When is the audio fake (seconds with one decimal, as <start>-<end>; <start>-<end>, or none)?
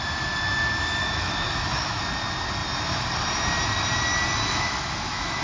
1.0-2.0; 4.5-5.4